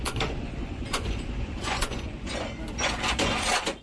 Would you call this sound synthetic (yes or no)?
yes